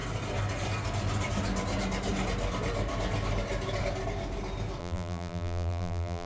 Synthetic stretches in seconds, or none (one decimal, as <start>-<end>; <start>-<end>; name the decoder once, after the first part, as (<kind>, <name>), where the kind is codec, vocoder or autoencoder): 4.8-6.3 (vocoder, BigVGAN v2)